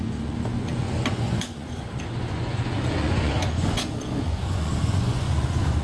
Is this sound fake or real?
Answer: fake